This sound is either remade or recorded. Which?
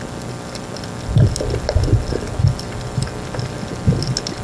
recorded